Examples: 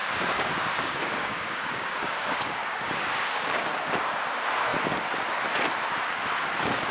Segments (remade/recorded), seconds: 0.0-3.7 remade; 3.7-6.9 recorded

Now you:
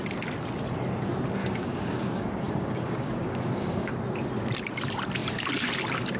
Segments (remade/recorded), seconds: 0.0-1.4 recorded; 1.4-3.9 remade; 3.9-6.2 recorded

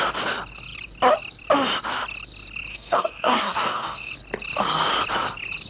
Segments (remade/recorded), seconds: 0.0-2.7 recorded; 2.7-4.1 remade; 4.1-5.7 recorded